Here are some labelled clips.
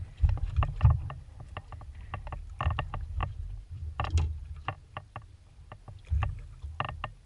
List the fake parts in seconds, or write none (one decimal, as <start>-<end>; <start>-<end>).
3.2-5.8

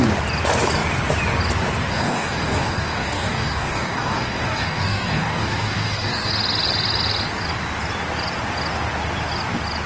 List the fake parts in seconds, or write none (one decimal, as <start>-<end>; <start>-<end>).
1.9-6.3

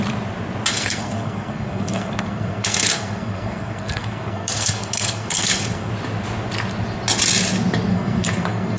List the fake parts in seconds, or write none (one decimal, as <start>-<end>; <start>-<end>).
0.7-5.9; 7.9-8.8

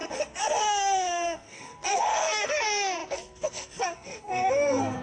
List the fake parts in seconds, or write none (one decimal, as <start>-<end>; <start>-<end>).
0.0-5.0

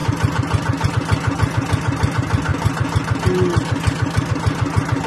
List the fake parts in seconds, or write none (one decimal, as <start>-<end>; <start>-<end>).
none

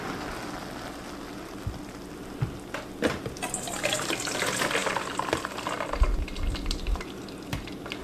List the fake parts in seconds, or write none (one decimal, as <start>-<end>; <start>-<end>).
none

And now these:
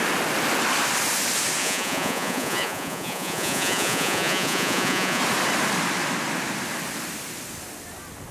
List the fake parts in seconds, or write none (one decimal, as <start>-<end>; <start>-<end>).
1.6-5.2

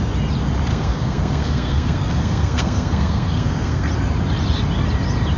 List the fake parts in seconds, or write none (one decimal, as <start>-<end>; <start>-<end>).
0.7-3.9